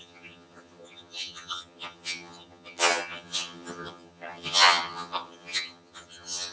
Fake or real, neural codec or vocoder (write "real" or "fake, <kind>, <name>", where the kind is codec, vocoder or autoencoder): fake, vocoder, HiFi-GAN